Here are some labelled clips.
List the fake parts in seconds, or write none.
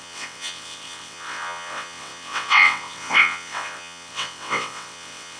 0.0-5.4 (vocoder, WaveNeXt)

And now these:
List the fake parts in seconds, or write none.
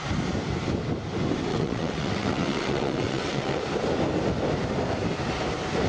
1.5-3.6 (vocoder, WaveNeXt)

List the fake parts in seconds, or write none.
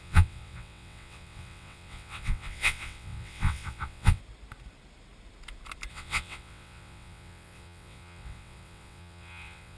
0.0-4.2 (vocoder, WaveNeXt); 5.9-9.8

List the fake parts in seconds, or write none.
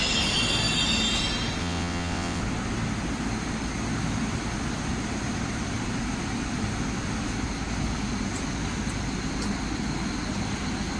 1.6-2.4 (vocoder, WaveNeXt)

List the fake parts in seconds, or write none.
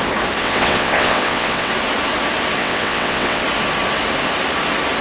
0.4-1.7 (vocoder, WaveNeXt); 2.6-3.4